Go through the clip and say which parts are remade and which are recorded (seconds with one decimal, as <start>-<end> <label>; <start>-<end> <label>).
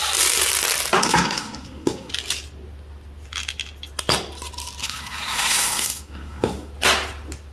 0.0-1.0 recorded; 1.0-2.1 remade; 2.1-4.8 recorded; 4.8-6.7 remade; 6.7-7.5 recorded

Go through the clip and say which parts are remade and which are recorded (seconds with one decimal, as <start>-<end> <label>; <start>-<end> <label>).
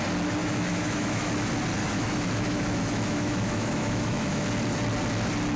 0.0-0.4 recorded; 0.4-1.3 remade; 1.3-1.8 recorded; 1.8-4.4 remade; 4.4-5.6 recorded